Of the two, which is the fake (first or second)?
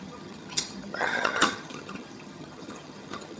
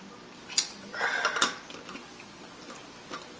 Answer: first